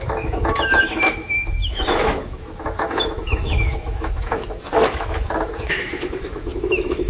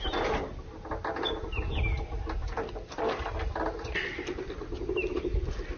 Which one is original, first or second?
second